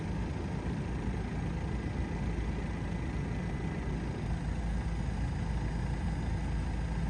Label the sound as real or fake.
real